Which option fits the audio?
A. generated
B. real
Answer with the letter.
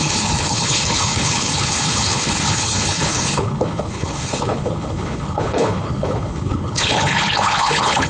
A